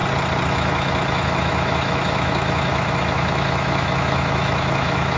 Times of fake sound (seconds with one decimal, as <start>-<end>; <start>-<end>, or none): 0.5-5.2

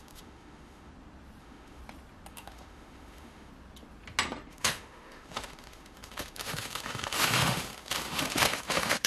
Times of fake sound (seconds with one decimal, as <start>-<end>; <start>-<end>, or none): 0.0-0.9; 1.4-1.8; 2.3-3.5; 4.5-9.1

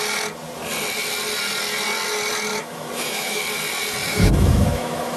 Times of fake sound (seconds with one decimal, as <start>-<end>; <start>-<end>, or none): 2.5-3.4; 4.1-5.2

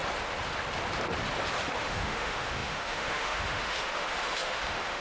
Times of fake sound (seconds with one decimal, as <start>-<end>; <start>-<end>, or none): 1.8-5.0

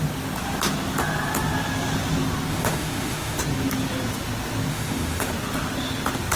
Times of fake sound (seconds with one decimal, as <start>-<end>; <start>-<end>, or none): 2.5-3.4; 4.7-5.3